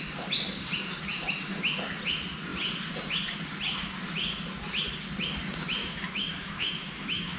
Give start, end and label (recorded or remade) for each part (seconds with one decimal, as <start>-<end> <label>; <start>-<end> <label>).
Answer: 0.0-5.8 recorded; 5.8-7.4 remade